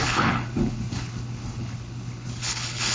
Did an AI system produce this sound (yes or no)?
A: yes